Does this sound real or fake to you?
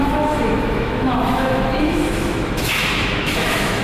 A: fake